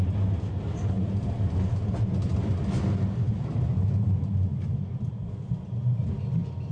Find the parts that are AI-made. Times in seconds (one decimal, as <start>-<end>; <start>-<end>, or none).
none